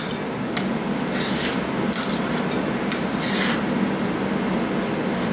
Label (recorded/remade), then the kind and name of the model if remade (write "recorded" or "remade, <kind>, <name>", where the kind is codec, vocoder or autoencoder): recorded